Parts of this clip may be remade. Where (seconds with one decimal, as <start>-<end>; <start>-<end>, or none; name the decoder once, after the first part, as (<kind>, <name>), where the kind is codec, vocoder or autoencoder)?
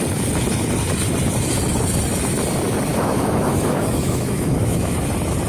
2.9-5.0 (autoencoder, DAC-VAE)